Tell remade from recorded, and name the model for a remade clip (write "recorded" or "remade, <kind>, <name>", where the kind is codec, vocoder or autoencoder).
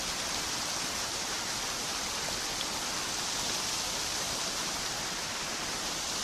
recorded